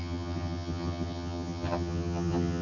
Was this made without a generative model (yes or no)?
no